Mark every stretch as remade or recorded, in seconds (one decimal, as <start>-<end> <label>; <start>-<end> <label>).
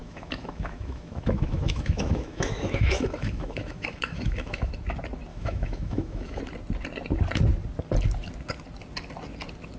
0.0-4.7 remade; 4.7-5.3 recorded; 5.3-6.4 remade; 6.4-9.8 recorded